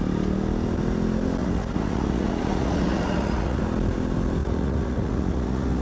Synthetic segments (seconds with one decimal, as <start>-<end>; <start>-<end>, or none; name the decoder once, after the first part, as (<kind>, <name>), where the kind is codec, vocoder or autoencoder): 1.4-3.6 (vocoder, Vocos); 4.4-5.8

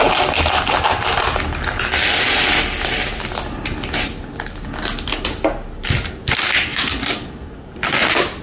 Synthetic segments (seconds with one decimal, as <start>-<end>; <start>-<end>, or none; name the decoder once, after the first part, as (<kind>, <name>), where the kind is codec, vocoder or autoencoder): none

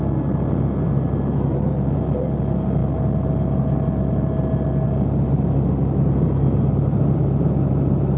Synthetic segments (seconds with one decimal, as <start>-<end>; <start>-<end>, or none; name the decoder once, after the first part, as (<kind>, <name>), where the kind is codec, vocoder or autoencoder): none

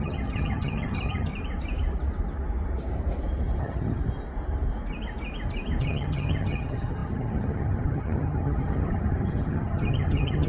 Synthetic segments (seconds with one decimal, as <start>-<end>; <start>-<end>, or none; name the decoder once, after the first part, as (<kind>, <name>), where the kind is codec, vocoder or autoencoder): 0.0-1.3 (vocoder, HiFi-GAN); 3.6-4.0; 5.8-10.5